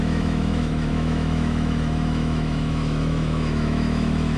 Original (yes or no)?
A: no